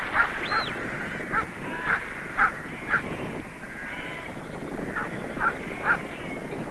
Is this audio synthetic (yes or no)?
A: no